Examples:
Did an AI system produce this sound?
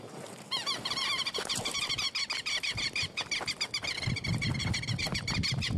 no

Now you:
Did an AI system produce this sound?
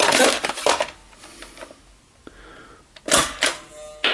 no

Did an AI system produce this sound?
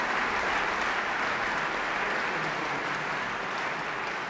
no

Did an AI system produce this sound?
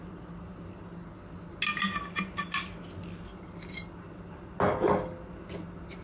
no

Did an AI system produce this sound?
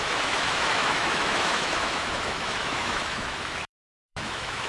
yes